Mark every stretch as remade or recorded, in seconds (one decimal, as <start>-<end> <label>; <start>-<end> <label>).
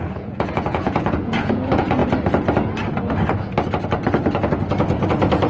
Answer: 0.0-2.0 remade; 2.0-5.5 recorded